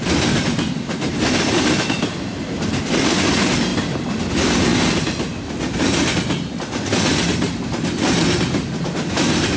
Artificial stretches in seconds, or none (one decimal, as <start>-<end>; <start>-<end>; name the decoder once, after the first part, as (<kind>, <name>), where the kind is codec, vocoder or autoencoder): none